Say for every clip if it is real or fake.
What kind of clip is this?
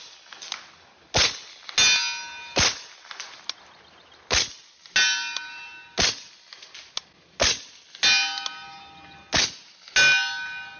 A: real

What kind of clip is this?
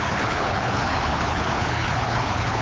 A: fake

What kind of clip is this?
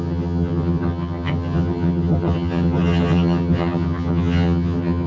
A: fake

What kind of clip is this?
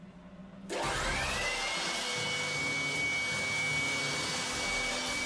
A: real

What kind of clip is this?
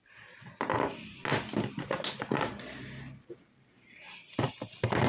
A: real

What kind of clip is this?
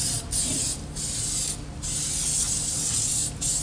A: real